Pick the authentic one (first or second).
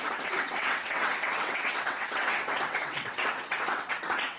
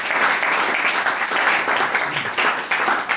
second